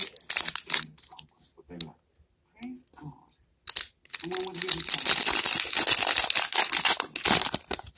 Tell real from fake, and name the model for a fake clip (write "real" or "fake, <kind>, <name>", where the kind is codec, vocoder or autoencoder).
real